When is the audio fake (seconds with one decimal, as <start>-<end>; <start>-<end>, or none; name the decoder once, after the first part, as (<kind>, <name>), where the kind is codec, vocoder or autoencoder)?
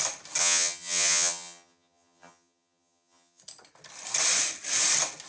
0.4-3.4 (vocoder, HiFi-GAN)